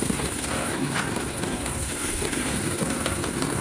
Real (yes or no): no